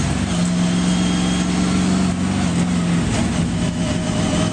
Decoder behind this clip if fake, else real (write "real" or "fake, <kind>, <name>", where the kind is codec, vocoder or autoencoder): real